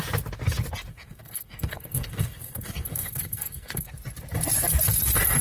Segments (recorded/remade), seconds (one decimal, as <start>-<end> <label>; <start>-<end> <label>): 0.0-0.9 recorded; 0.9-3.9 remade; 3.9-5.4 recorded